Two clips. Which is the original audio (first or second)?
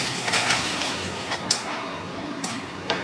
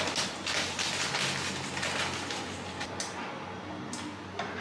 second